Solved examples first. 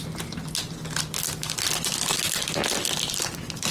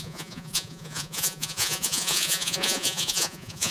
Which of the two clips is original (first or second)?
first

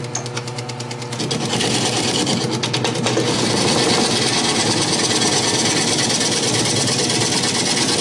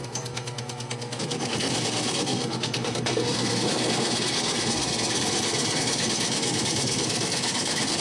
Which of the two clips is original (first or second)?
first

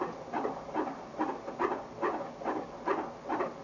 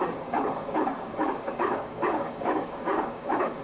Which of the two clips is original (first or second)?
first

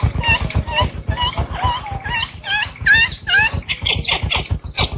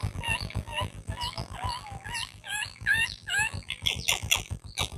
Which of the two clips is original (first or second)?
first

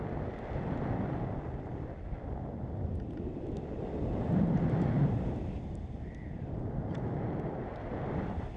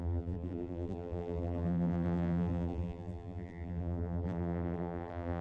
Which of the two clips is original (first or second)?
first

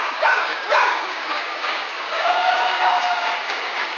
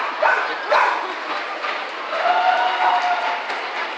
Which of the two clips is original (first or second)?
second